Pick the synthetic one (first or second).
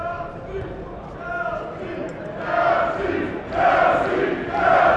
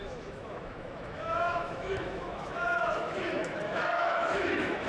second